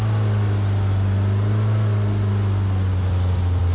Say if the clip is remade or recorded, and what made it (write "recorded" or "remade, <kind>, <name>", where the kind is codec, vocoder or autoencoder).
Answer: recorded